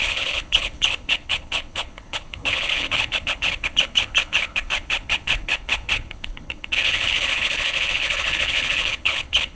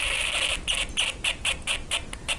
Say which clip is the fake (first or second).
first